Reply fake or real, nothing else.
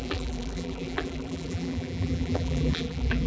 fake